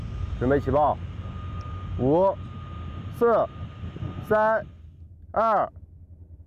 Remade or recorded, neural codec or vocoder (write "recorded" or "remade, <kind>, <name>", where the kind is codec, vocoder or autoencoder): recorded